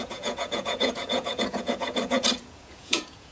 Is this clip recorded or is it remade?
remade